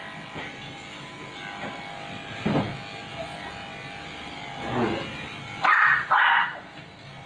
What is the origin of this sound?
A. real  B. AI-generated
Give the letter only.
A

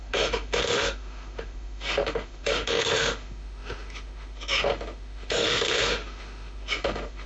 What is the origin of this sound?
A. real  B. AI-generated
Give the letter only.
B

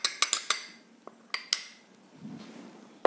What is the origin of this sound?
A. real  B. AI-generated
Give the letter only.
A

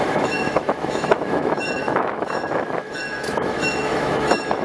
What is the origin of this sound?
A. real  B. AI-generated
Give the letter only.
B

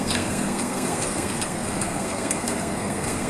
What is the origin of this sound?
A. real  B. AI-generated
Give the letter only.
B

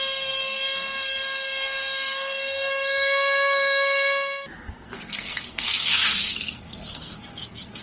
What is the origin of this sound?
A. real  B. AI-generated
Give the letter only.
B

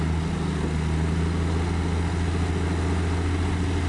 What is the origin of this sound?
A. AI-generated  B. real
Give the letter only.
B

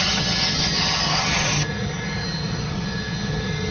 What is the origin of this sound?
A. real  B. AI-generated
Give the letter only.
B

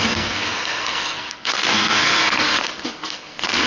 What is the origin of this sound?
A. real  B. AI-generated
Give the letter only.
B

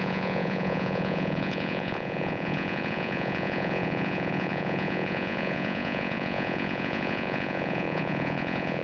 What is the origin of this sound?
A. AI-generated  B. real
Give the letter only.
A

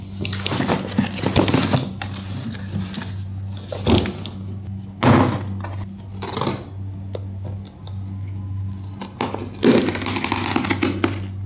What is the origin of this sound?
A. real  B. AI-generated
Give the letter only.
A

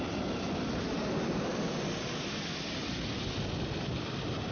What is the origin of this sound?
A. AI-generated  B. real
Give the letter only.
B